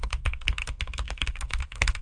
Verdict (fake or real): fake